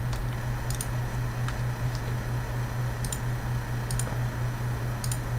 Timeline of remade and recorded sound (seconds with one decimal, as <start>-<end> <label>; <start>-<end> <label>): 0.0-5.4 recorded